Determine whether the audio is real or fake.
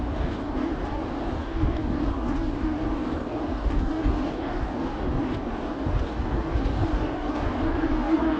fake